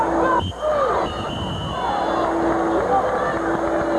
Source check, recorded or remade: recorded